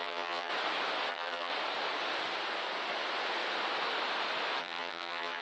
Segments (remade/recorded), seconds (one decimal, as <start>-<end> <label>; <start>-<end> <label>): 0.0-0.5 remade; 0.5-1.1 recorded; 1.1-1.5 remade; 1.5-4.6 recorded; 4.6-5.4 remade